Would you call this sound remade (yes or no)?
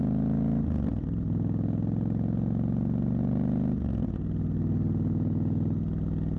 no